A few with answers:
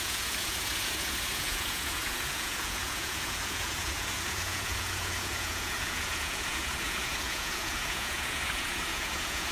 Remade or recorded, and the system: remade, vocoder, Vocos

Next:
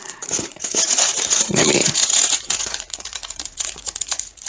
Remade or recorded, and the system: remade, vocoder, Vocos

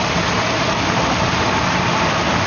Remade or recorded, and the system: recorded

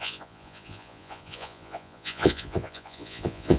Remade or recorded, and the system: remade, vocoder, Vocos